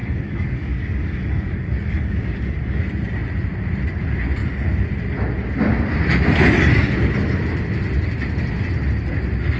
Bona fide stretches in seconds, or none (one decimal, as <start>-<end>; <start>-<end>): 2.8-9.6